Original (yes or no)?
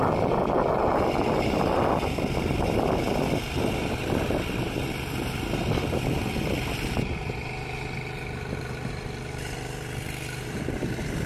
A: yes